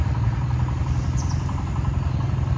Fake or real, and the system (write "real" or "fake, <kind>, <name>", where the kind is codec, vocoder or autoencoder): real